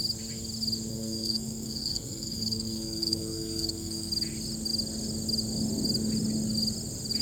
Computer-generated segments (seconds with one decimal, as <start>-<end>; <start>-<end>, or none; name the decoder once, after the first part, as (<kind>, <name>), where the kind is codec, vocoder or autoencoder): 0.9-4.1 (codec, SNAC)